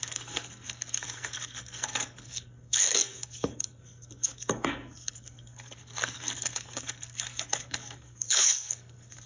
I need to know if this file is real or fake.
fake